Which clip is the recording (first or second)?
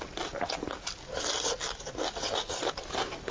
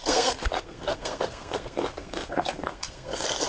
first